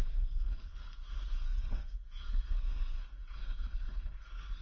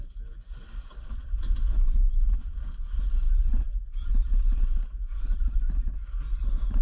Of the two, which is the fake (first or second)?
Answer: first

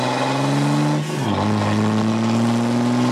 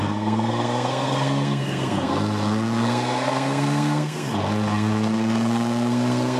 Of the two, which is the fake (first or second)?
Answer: second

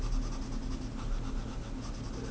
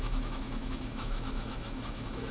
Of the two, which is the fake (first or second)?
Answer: second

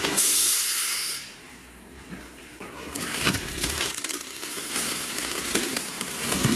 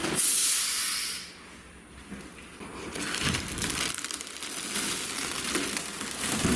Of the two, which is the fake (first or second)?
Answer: first